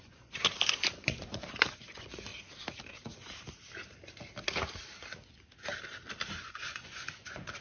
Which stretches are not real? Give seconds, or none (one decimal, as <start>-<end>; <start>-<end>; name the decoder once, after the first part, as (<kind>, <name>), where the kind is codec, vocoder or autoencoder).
0.0-2.3 (vocoder, Vocos); 6.4-7.6